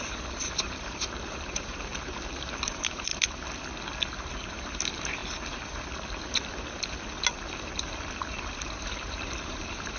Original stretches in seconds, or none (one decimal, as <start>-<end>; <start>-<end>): 1.9-2.7; 3.1-4.2; 5.2-8.7